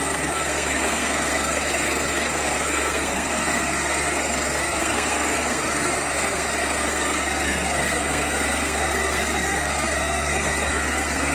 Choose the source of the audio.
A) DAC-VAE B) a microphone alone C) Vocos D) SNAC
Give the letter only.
D